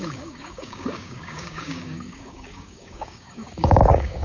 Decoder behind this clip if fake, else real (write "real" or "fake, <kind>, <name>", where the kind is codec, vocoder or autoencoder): fake, codec, DAC